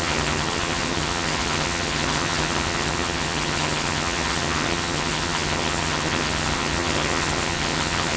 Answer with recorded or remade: remade